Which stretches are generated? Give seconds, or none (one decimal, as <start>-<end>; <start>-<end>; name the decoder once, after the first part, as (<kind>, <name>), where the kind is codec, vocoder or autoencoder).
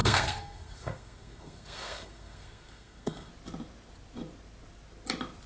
0.0-3.3 (codec, SNAC)